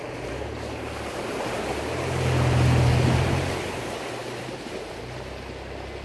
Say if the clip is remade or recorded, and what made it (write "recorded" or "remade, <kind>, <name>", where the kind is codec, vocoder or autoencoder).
recorded